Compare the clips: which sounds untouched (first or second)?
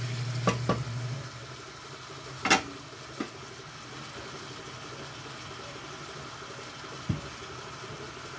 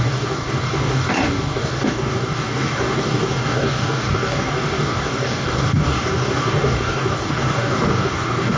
first